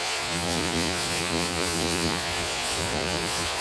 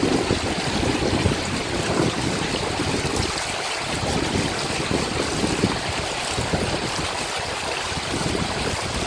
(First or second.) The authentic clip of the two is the second